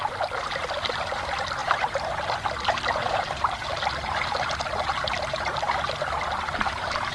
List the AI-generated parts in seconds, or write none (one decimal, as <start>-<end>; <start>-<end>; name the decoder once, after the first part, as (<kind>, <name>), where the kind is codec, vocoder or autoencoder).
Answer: none